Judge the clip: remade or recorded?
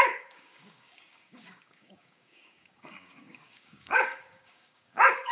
remade